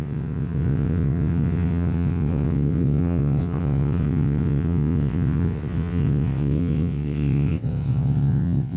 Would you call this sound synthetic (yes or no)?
yes